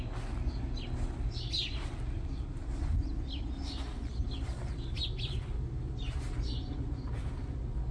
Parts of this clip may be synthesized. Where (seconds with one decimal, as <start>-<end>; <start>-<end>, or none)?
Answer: none